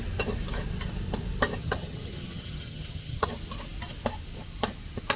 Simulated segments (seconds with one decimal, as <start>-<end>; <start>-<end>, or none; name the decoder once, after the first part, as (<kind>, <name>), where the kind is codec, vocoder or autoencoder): 1.6-3.3 (vocoder, HiFi-GAN)